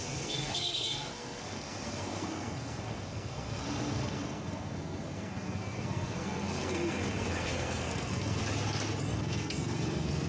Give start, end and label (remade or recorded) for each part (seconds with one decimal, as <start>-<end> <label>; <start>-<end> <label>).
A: 0.0-8.4 remade; 8.4-9.0 recorded; 9.0-10.3 remade